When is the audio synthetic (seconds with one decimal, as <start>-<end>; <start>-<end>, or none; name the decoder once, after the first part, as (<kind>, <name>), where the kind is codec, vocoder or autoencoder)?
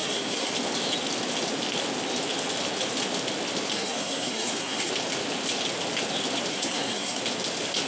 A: 0.0-0.5 (codec, SNAC); 3.7-4.9; 6.5-7.2